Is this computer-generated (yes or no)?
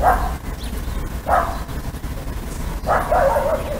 no